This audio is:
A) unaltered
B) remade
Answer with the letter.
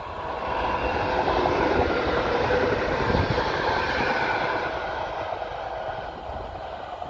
A